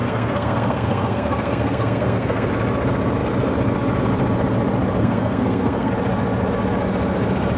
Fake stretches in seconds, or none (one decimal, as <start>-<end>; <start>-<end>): 0.0-2.5; 5.0-5.9